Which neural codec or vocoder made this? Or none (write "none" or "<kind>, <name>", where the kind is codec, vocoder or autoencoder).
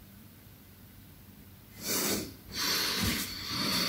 vocoder, BigVGAN v2